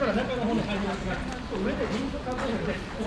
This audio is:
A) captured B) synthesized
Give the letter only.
A